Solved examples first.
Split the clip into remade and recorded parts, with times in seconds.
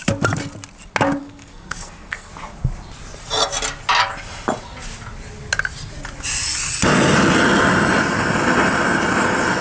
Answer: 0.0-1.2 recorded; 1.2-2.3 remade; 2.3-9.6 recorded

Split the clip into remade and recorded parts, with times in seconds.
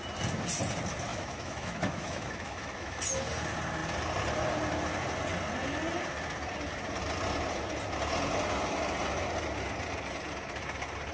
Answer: 0.0-1.1 recorded; 1.1-3.0 remade; 3.0-11.1 recorded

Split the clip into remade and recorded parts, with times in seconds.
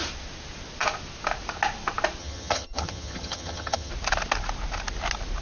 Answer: 0.0-2.2 recorded; 2.2-3.9 remade; 3.9-5.4 recorded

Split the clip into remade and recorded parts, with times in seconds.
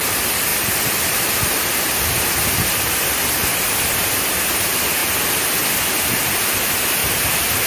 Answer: 0.0-0.5 recorded; 0.5-1.5 remade; 1.5-7.0 recorded; 7.0-7.7 remade